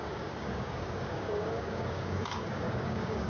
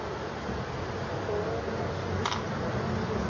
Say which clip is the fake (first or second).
first